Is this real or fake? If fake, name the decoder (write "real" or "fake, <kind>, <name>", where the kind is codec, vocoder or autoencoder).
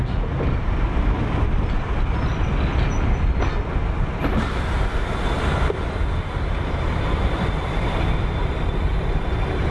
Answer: real